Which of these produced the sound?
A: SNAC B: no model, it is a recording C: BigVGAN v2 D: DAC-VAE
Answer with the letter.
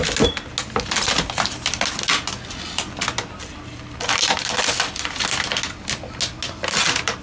B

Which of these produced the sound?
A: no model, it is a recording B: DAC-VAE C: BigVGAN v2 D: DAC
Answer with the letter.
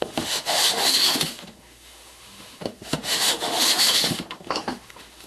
B